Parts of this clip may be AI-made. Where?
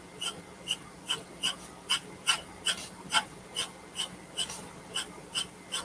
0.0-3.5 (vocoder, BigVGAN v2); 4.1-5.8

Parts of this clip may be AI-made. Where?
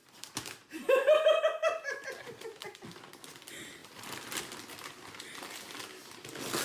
0.0-2.7 (vocoder, BigVGAN v2); 3.8-4.4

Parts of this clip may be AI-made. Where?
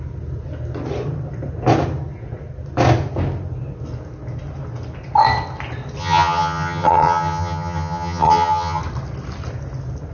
6.0-8.8 (vocoder, HiFi-GAN)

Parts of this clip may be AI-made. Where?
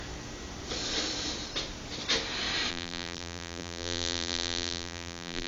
2.7-5.5 (vocoder, BigVGAN v2)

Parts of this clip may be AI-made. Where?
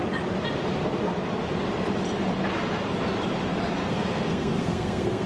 3.8-5.3 (codec, SNAC)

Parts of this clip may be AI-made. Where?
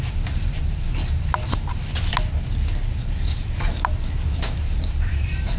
0.0-1.3 (vocoder, BigVGAN v2); 3.0-5.6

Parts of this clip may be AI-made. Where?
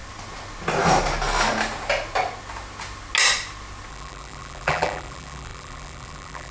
3.9-6.5 (vocoder, BigVGAN v2)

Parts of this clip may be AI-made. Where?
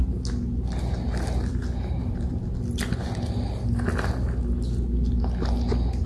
none